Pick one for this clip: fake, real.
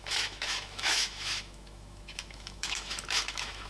fake